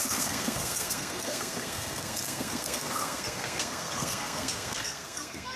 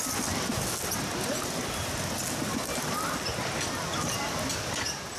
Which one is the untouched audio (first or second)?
second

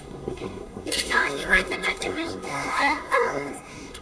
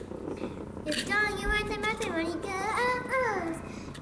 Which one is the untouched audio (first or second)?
second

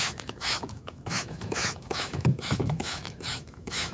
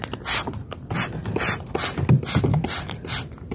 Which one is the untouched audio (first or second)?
second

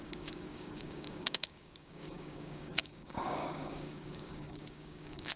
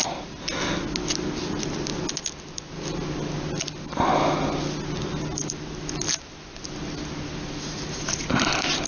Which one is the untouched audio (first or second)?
second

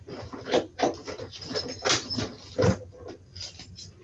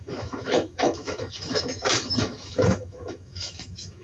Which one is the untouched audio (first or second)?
first